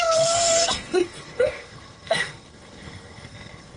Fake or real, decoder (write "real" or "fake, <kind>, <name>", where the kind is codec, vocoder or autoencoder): fake, codec, SNAC